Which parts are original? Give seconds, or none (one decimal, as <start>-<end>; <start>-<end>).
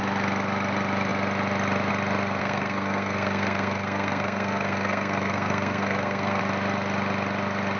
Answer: 0.0-2.4; 6.4-7.8